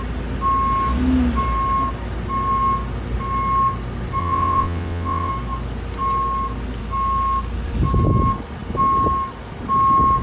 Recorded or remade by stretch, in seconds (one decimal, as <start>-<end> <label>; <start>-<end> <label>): 0.0-4.2 recorded; 4.2-5.3 remade; 5.3-10.2 recorded